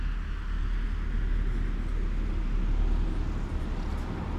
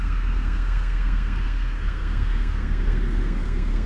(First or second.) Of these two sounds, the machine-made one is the second